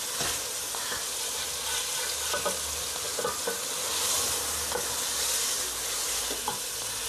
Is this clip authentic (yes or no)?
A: yes